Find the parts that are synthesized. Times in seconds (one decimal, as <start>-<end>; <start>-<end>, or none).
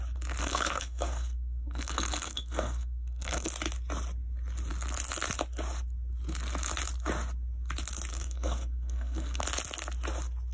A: 0.4-3.5; 8.1-9.4